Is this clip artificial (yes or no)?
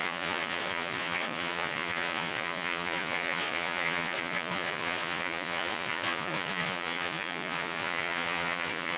yes